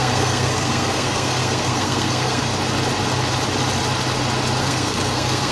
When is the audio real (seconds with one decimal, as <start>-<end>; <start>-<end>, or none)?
2.5-4.6